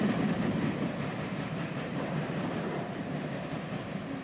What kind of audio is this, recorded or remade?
remade